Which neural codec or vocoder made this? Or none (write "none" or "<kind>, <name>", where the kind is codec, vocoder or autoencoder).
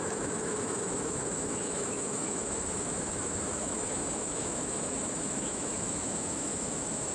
autoencoder, DAC-VAE